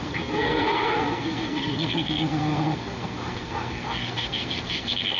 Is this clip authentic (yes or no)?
no